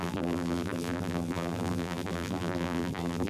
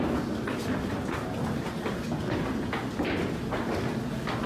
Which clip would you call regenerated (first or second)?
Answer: first